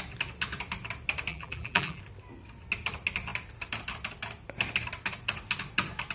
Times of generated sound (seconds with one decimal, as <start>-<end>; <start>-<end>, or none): 1.3-2.0